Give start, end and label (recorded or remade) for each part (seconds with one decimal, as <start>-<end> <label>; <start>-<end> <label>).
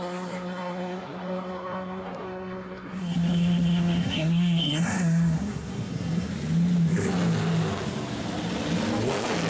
0.0-6.3 remade; 6.3-9.5 recorded